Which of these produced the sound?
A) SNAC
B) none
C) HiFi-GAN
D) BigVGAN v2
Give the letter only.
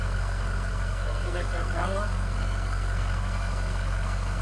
A